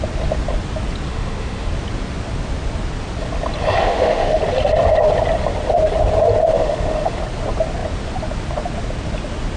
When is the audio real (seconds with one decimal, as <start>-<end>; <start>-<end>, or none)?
0.0-1.1; 1.7-3.8; 4.4-6.5; 7.2-9.6